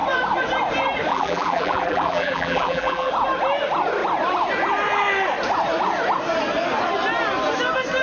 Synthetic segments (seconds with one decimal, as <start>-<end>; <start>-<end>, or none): 1.1-3.1